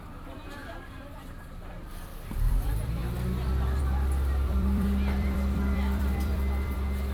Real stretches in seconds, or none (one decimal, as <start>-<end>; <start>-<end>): 3.0-3.8

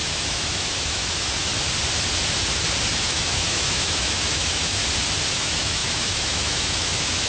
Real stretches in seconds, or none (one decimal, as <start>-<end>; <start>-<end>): 1.5-2.9; 4.8-5.3

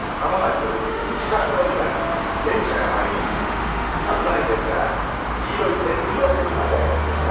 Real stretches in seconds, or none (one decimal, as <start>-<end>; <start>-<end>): 0.0-0.9; 1.5-3.2; 4.3-6.1

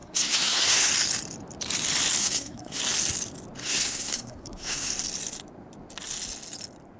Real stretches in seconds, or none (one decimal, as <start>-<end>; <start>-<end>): 0.9-2.2; 2.8-3.6; 4.9-7.0